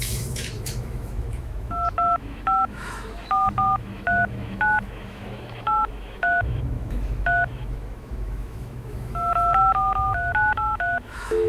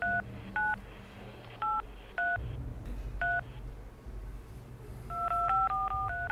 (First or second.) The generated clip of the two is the first